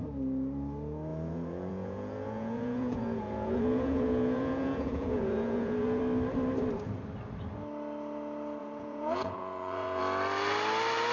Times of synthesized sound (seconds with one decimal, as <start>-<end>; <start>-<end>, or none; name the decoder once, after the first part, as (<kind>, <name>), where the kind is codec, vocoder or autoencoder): 1.1-6.0 (vocoder, Vocos); 8.6-10.0